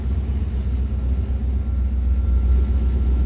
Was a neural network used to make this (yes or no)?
no